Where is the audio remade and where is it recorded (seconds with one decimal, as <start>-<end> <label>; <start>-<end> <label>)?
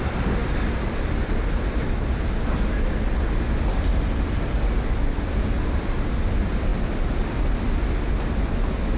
0.0-6.7 remade; 6.7-8.1 recorded; 8.1-9.0 remade